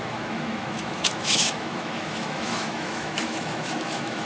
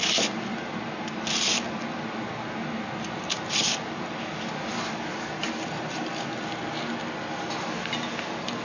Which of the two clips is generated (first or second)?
first